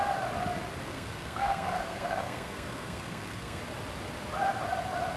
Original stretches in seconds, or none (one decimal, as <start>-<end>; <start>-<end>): 0.0-0.8; 3.6-5.2